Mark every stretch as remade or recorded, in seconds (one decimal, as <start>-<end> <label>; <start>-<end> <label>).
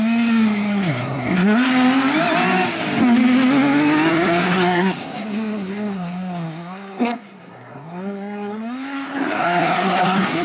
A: 0.0-1.7 remade; 1.7-4.1 recorded; 4.1-10.4 remade